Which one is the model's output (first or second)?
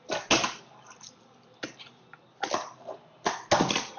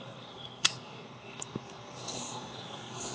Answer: second